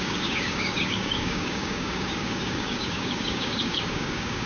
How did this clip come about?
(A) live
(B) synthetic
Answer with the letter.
B